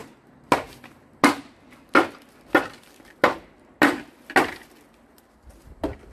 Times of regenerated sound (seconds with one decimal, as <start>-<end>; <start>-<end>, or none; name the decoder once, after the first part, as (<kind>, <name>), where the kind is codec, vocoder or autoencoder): none